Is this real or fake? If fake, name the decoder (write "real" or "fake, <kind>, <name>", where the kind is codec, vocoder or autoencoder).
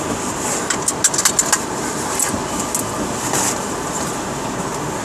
real